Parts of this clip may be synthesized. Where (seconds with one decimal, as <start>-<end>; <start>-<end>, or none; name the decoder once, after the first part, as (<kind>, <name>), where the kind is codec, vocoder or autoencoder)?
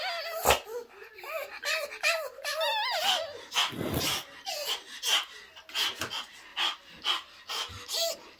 6.5-7.5 (vocoder, BigVGAN v2)